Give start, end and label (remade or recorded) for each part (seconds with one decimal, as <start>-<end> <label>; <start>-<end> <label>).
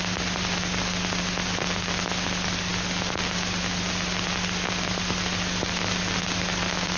0.0-7.0 recorded